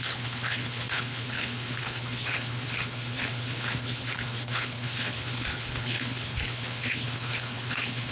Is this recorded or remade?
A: remade